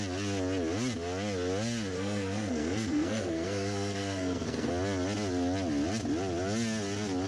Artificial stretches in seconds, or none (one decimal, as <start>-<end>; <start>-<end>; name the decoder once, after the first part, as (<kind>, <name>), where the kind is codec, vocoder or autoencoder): 1.9-4.7 (codec, SNAC)